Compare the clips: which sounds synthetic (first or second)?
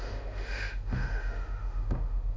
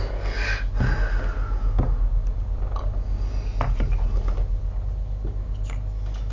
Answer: first